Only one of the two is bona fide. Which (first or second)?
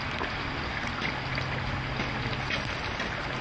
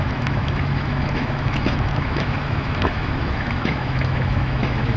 first